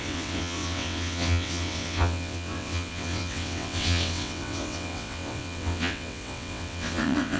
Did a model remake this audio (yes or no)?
yes